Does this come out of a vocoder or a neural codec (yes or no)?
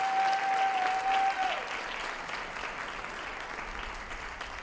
no